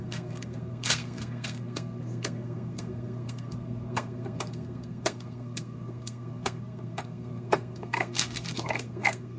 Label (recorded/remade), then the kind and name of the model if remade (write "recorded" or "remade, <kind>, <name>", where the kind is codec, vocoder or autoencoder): remade, codec, SNAC